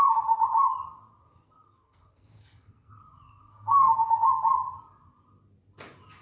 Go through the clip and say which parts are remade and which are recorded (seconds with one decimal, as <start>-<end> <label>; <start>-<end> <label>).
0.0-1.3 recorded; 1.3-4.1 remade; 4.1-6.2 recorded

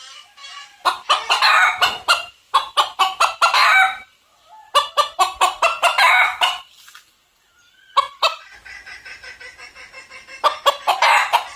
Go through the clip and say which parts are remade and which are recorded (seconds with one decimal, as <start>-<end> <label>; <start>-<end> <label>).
0.0-0.4 recorded; 0.4-1.3 remade; 1.3-11.6 recorded

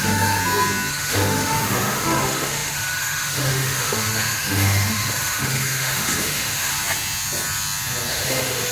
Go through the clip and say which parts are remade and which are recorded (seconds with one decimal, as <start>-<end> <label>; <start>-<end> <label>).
0.0-0.4 remade; 0.4-0.9 recorded; 0.9-6.7 remade; 6.7-8.1 recorded; 8.1-8.7 remade

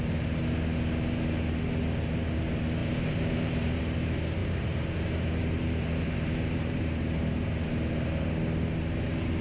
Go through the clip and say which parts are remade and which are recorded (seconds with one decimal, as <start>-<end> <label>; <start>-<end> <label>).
0.0-2.8 recorded; 2.8-3.8 remade; 3.8-4.4 recorded; 4.4-7.2 remade; 7.2-9.4 recorded

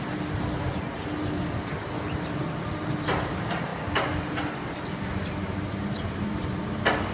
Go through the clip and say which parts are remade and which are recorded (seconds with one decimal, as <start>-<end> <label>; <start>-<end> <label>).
0.0-7.1 recorded

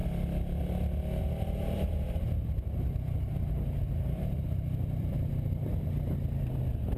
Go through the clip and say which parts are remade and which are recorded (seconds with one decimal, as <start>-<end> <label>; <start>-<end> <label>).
0.0-1.2 recorded; 1.2-7.0 remade

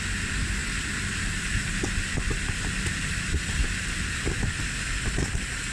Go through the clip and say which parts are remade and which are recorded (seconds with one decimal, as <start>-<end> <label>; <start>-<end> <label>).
0.0-5.7 recorded

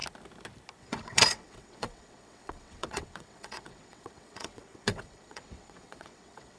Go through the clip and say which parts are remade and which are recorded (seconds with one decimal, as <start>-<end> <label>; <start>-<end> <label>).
0.0-0.8 recorded; 0.8-6.6 remade